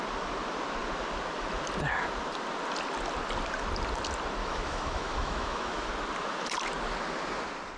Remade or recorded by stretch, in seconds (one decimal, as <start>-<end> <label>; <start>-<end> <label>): 0.0-4.4 recorded; 4.4-5.9 remade; 5.9-7.8 recorded